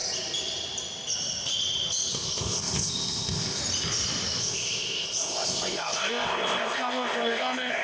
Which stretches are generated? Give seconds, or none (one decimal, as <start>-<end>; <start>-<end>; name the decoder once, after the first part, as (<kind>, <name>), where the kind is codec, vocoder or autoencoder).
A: 2.1-3.6 (codec, ZipCodec); 4.4-7.8